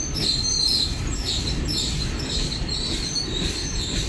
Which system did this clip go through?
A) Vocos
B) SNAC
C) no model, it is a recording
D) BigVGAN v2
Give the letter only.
C